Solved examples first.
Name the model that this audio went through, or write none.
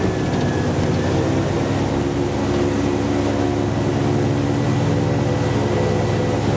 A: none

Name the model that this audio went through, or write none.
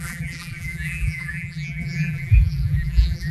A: vocoder, BigVGAN v2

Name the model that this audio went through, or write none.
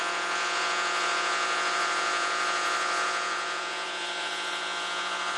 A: vocoder, Vocos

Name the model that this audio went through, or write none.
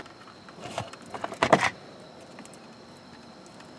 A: vocoder, BigVGAN v2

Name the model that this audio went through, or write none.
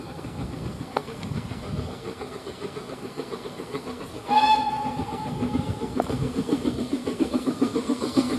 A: codec, SNAC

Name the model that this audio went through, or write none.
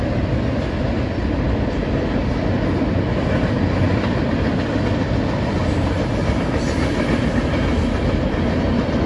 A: none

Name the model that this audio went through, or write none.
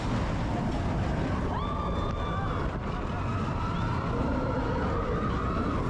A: none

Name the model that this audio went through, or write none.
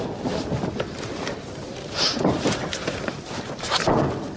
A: none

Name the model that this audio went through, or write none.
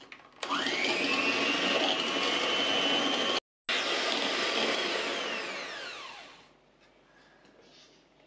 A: none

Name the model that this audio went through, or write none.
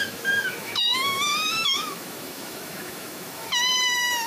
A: autoencoder, DAC-VAE